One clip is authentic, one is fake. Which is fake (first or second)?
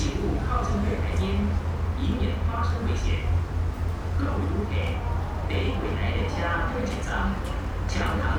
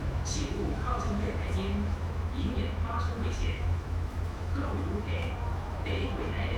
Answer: second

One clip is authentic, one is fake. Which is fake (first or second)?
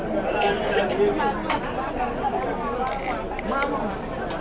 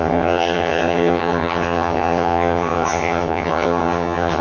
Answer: second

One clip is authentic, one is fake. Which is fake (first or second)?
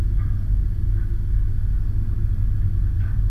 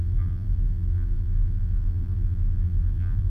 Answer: second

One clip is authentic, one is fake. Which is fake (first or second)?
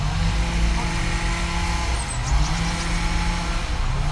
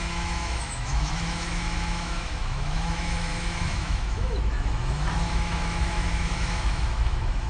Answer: second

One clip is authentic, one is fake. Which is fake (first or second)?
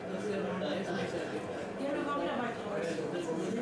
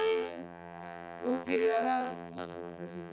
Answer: second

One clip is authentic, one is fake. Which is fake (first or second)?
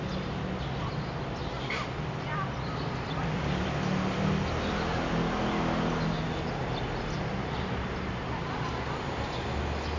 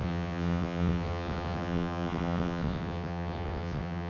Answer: second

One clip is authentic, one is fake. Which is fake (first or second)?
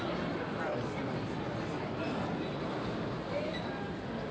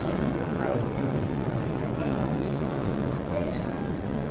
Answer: second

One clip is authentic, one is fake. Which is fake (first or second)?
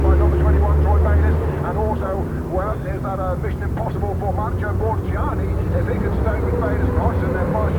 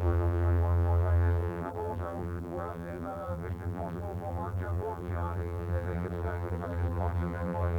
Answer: second